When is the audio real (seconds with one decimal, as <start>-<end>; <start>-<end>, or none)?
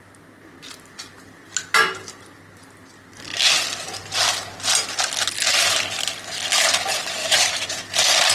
0.0-7.2; 7.8-8.3